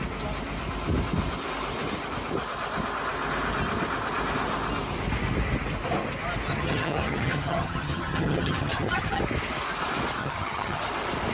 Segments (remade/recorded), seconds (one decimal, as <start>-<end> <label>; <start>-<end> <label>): 0.0-6.5 recorded; 6.5-9.2 remade; 9.2-10.2 recorded; 10.2-10.8 remade; 10.8-11.3 recorded

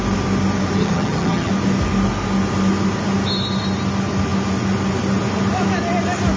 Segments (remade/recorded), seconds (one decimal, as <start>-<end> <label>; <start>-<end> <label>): 0.0-0.8 recorded; 0.8-1.5 remade; 1.5-6.4 recorded

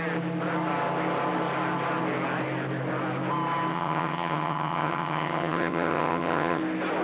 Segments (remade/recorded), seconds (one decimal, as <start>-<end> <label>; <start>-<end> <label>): 0.0-3.7 recorded; 3.7-6.6 remade; 6.6-7.0 recorded

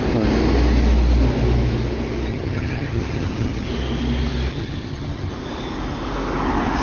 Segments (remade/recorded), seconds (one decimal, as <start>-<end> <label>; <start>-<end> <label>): 0.0-2.3 recorded; 2.3-3.7 remade; 3.7-4.5 recorded; 4.5-5.3 remade; 5.3-6.8 recorded